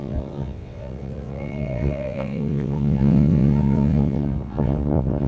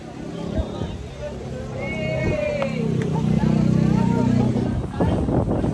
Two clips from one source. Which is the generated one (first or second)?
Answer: first